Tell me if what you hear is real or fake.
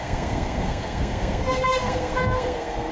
fake